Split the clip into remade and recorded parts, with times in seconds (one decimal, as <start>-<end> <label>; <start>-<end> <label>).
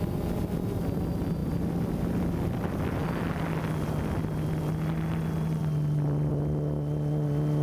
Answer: 0.0-7.6 recorded